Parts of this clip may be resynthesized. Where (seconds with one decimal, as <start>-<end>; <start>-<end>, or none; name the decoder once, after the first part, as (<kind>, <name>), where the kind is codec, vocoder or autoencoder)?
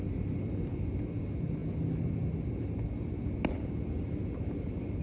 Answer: none